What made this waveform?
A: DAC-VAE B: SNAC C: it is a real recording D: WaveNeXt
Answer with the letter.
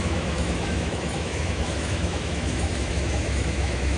A